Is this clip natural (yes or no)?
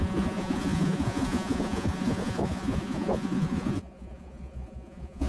no